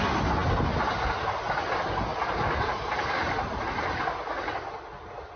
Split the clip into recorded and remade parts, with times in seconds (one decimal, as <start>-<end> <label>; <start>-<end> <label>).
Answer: 0.0-5.4 recorded